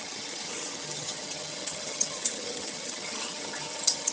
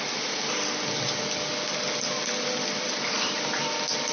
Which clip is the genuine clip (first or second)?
second